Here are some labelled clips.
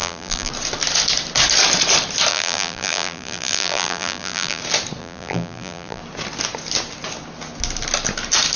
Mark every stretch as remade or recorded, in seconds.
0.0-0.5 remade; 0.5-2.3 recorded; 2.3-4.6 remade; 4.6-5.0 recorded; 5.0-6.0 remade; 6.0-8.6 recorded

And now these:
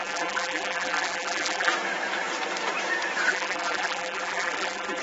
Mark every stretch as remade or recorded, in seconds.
0.0-1.7 remade; 1.7-3.3 recorded; 3.3-5.0 remade

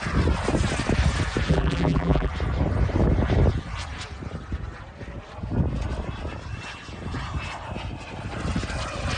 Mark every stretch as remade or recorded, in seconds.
0.0-1.5 recorded; 1.5-2.3 remade; 2.3-9.2 recorded

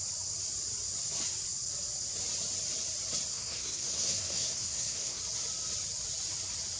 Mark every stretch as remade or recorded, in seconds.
0.0-3.3 recorded; 3.3-5.2 remade; 5.2-6.8 recorded

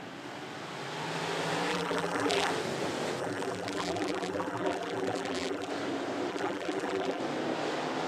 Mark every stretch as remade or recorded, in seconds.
0.0-1.7 recorded; 1.7-2.5 remade; 2.5-3.2 recorded; 3.2-5.7 remade; 5.7-6.3 recorded; 6.3-7.2 remade; 7.2-8.1 recorded

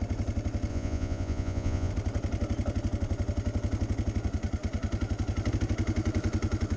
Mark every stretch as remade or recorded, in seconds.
0.0-0.7 recorded; 0.7-1.9 remade; 1.9-6.8 recorded

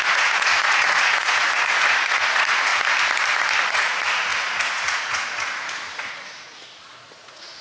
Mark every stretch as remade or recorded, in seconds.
0.0-2.7 remade; 2.7-3.7 recorded; 3.7-7.6 remade

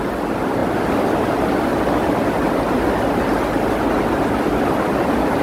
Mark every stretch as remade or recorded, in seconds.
0.0-5.4 recorded